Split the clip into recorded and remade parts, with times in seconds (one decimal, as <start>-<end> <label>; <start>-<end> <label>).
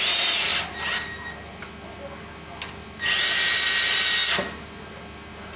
0.0-5.6 recorded